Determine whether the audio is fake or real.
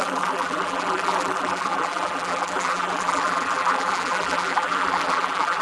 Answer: fake